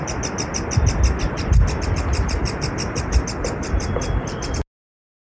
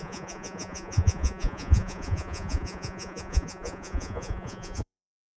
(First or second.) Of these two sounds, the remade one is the second